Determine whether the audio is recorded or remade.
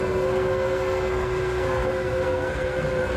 remade